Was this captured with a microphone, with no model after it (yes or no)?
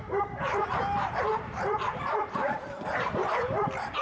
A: no